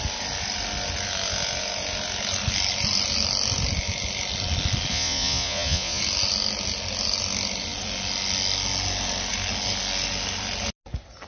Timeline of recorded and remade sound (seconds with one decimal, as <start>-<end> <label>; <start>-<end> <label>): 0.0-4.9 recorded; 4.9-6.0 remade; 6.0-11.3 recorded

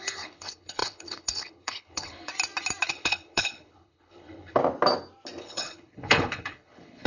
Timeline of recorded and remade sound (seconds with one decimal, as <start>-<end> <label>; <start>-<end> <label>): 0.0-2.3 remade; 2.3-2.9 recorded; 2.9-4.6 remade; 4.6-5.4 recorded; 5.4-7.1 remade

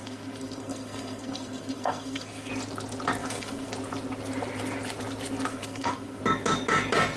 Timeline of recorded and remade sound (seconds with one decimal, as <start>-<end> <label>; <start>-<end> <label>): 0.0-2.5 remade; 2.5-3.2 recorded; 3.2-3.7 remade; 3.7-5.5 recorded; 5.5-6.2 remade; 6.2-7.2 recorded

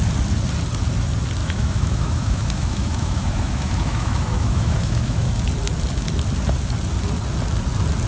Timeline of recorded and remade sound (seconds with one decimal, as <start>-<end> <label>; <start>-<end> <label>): 0.0-1.4 recorded; 1.4-5.3 remade; 5.3-8.1 recorded

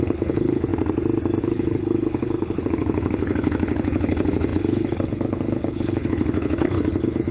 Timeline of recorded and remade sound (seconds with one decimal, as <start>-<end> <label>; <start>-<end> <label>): 0.0-0.7 remade; 0.7-1.4 recorded; 1.4-7.3 remade

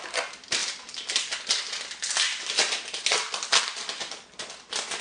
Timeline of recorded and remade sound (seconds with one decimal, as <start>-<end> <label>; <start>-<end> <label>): 0.0-5.0 recorded